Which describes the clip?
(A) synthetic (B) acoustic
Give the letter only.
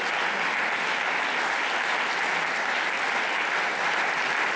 B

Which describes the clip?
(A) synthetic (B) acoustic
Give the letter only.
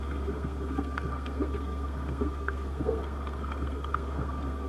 A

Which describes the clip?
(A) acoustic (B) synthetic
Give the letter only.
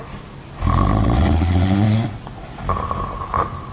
A